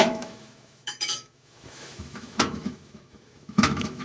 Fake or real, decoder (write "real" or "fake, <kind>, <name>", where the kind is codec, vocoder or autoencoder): fake, autoencoder, DAC-VAE